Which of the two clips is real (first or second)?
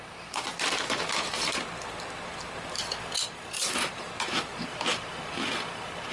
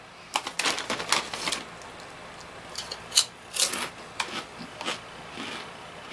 second